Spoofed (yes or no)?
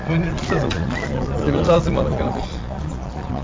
yes